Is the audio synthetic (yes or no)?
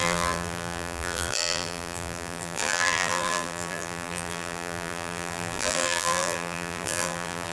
yes